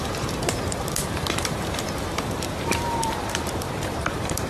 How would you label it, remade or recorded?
remade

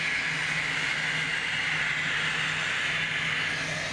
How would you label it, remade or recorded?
recorded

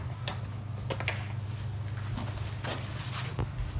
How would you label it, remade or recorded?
recorded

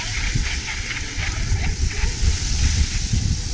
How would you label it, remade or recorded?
remade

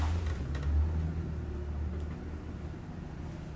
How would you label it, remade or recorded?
recorded